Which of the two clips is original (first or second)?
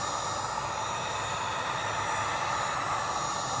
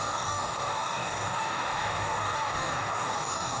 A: first